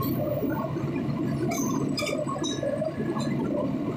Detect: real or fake real